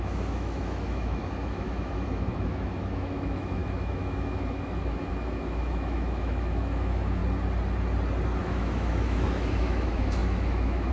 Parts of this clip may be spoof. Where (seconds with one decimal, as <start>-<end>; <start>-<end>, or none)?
0.0-7.2; 8.4-10.9